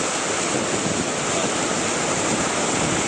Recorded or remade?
recorded